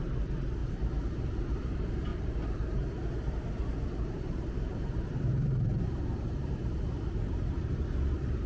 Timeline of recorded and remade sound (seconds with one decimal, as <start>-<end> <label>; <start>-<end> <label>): 0.0-8.5 remade